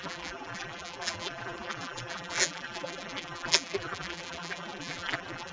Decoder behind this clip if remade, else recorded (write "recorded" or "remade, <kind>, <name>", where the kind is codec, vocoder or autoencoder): remade, vocoder, BigVGAN v2